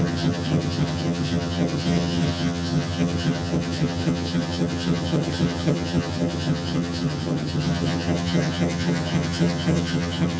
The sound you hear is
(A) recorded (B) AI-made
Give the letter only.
B